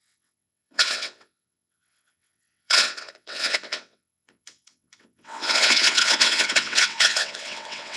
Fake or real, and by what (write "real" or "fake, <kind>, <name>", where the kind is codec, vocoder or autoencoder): fake, vocoder, WaveNeXt